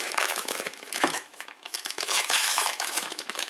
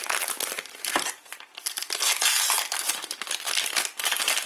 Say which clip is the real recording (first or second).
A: second